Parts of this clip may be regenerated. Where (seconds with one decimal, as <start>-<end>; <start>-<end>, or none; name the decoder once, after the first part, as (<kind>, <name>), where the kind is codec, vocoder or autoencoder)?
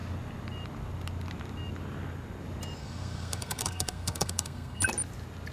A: 2.8-4.8 (codec, SNAC)